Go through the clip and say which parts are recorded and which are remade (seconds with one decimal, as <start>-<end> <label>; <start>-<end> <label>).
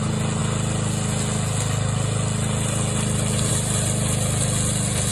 0.0-5.1 recorded